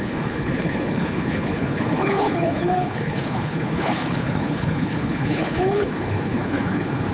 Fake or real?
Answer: fake